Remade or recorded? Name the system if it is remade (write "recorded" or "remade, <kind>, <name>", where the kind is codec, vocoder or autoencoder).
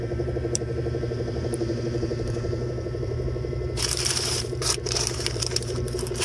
remade, vocoder, BigVGAN v2